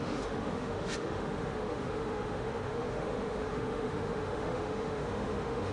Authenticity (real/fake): fake